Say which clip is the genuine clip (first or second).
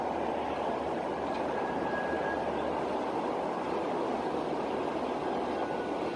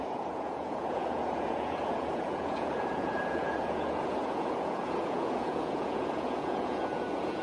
first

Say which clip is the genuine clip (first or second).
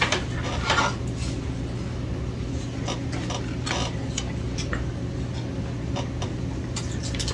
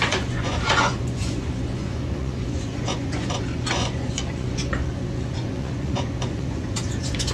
first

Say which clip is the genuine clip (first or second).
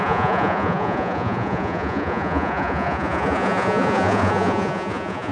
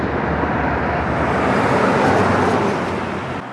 second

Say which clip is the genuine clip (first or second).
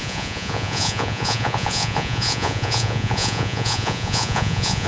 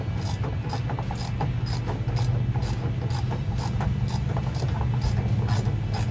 second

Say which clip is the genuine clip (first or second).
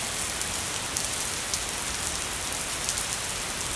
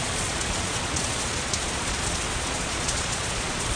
first